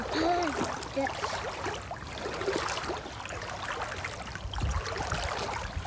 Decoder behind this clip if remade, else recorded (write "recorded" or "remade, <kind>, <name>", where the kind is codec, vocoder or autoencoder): recorded